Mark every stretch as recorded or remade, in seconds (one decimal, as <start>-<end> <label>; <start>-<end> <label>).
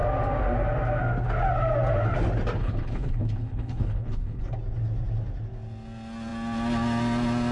0.0-2.6 recorded; 2.6-4.4 remade; 4.4-7.5 recorded